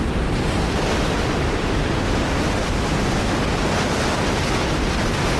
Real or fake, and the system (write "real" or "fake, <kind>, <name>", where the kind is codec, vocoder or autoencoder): real